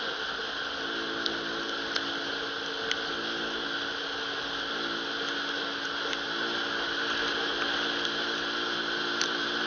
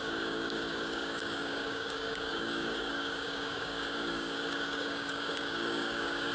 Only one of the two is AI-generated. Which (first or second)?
second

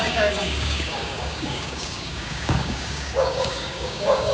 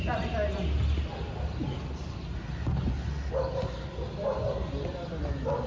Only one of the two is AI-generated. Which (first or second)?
first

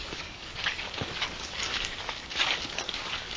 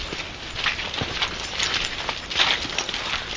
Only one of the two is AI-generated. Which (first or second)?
first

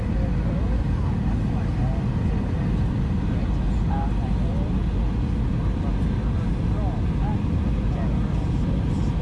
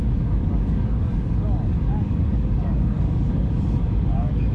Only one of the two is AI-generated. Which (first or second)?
second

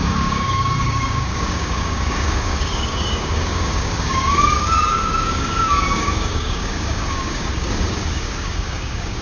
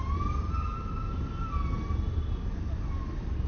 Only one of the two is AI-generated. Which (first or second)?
first